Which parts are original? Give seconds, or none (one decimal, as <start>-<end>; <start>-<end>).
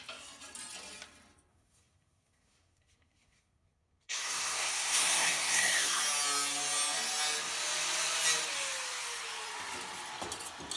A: 0.0-1.5; 6.0-10.8